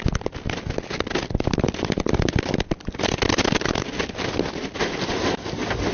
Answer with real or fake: real